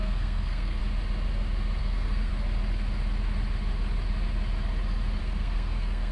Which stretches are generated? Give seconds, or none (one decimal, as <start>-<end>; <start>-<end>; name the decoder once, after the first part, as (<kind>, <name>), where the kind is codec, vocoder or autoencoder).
0.0-0.8 (codec, SNAC); 1.8-2.3; 5.2-6.1